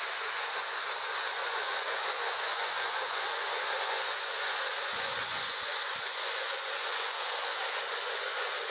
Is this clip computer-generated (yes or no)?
yes